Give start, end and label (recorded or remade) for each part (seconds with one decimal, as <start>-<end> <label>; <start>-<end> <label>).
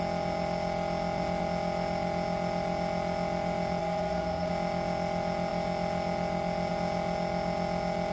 0.0-3.8 recorded; 3.8-4.5 remade; 4.5-8.1 recorded